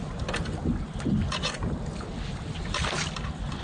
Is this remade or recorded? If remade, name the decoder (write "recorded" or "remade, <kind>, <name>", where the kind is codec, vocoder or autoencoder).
remade, vocoder, BigVGAN v2